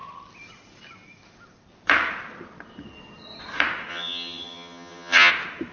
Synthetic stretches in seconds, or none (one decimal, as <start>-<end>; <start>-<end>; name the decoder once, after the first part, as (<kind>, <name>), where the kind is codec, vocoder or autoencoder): 3.9-5.3 (vocoder, HiFi-GAN)